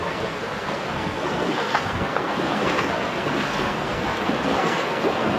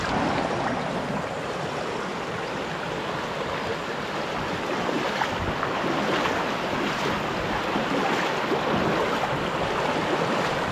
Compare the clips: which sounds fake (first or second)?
first